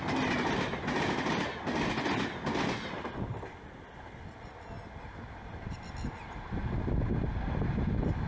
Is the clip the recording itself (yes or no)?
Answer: yes